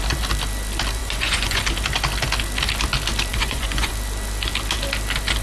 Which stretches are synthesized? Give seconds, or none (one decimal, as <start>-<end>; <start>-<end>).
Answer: 1.0-1.6; 3.3-3.9